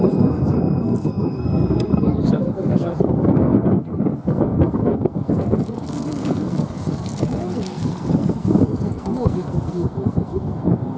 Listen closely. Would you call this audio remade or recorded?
remade